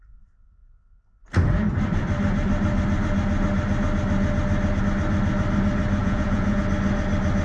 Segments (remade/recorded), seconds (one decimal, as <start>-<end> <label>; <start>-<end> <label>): 0.0-6.0 recorded; 6.0-6.6 remade; 6.6-7.4 recorded